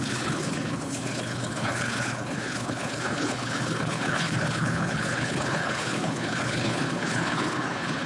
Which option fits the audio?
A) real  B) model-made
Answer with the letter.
B